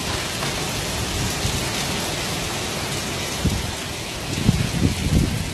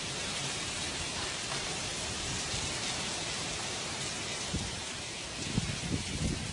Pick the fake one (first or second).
second